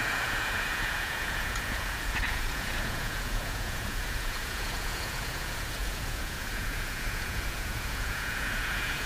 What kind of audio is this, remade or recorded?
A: remade